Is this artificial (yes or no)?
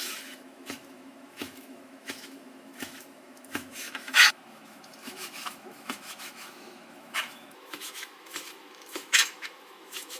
yes